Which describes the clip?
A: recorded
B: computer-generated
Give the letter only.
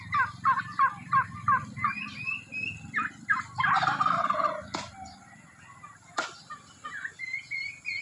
A